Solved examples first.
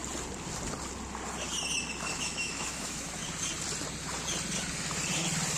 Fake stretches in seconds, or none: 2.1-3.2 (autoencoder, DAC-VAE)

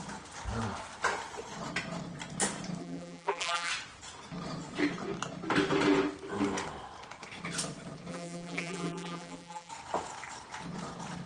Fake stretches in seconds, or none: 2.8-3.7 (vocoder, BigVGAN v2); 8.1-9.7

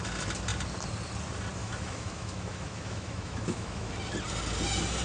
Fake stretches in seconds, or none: 1.6-3.9 (autoencoder, DAC-VAE)

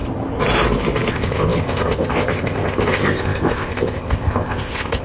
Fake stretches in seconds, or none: 1.1-5.0 (codec, ZipCodec)

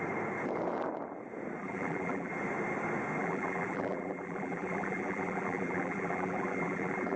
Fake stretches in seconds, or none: 1.6-2.3 (vocoder, BigVGAN v2); 3.2-7.2

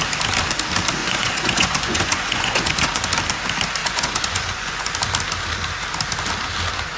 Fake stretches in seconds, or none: 1.0-3.1 (vocoder, Vocos); 3.8-4.9

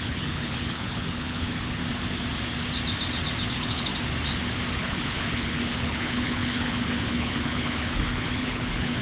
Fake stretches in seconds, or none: 0.0-1.8 (codec, HILCodec); 3.5-3.9; 4.7-9.0